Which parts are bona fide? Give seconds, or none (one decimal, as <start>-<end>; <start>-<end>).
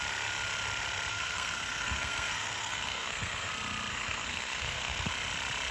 0.0-1.1; 3.5-3.9; 5.1-5.7